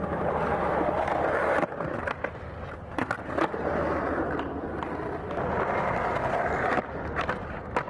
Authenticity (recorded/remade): recorded